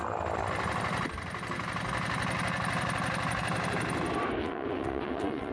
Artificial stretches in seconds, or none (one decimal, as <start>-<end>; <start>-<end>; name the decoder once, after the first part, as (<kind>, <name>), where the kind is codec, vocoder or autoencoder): 4.4-5.5 (vocoder, WaveNeXt)